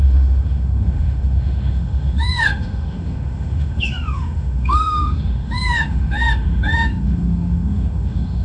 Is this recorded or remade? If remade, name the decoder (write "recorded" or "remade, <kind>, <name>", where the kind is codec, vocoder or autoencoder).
remade, autoencoder, DAC-VAE